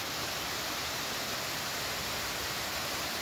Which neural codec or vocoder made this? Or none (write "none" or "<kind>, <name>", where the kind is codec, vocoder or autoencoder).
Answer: none